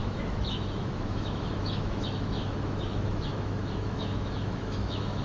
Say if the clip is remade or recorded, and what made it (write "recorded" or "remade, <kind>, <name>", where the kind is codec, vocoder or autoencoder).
remade, autoencoder, DAC-VAE